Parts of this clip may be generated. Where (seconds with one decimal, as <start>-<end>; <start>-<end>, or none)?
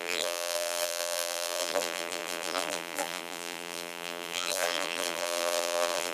0.0-6.1